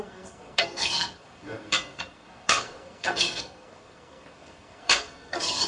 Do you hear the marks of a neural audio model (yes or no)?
yes